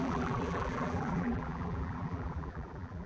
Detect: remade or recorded remade